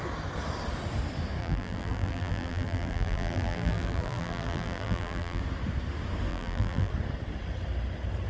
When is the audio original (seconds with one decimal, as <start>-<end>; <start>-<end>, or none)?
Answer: 0.0-1.4; 5.4-6.3; 6.9-8.3